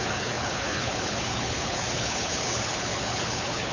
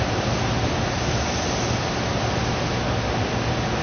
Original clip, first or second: second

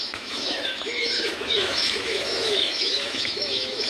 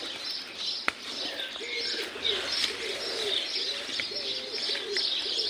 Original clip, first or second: second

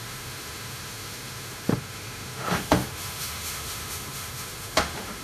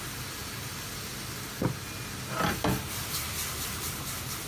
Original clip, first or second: second